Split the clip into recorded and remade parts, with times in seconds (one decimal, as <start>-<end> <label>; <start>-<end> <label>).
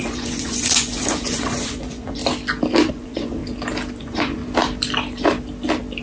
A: 0.0-2.2 remade; 2.2-2.9 recorded; 2.9-3.4 remade; 3.4-4.0 recorded; 4.0-4.4 remade; 4.4-6.0 recorded